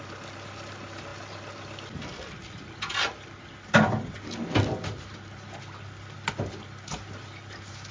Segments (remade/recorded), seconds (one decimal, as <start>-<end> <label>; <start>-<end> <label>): 0.0-7.9 recorded